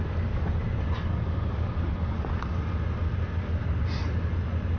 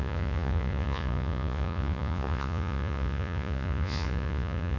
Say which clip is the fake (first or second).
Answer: second